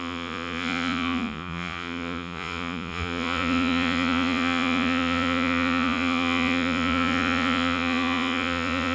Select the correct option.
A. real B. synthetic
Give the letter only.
B